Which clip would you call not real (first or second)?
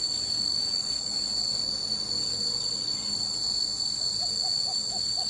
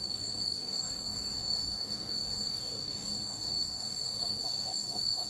second